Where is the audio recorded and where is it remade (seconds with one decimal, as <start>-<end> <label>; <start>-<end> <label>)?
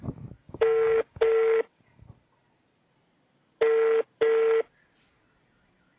0.0-0.4 recorded; 0.4-2.0 remade; 2.0-6.0 recorded